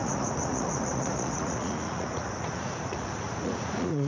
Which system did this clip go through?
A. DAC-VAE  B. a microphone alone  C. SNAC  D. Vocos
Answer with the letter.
D